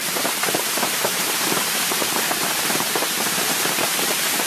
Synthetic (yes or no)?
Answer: yes